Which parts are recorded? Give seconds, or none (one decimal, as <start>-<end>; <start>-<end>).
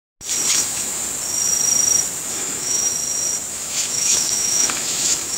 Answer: 0.0-0.5; 1.0-2.3; 2.9-3.5